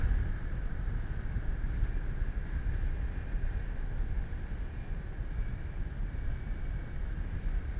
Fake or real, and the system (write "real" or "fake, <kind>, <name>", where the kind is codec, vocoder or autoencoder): real